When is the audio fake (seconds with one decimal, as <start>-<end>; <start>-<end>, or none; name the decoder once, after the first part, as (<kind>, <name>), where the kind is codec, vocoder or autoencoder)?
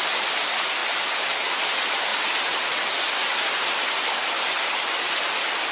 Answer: none